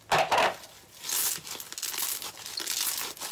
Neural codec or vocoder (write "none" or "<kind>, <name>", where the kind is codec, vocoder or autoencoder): none